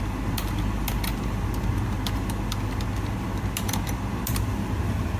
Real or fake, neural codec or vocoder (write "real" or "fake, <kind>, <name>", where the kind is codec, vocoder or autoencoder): real